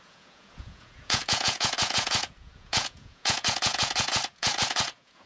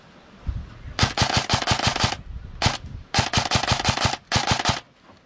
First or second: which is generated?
first